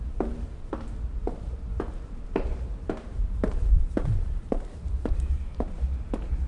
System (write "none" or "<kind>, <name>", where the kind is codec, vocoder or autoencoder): vocoder, BigVGAN v2